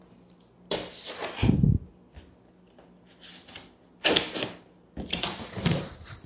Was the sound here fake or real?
real